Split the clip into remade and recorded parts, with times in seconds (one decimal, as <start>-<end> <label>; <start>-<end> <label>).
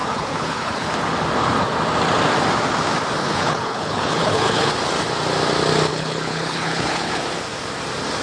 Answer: 0.0-0.9 remade; 0.9-3.2 recorded; 3.2-4.7 remade; 4.7-5.9 recorded; 5.9-7.2 remade; 7.2-8.2 recorded